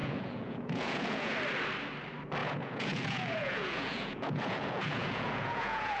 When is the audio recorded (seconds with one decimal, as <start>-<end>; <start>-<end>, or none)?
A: 1.3-2.4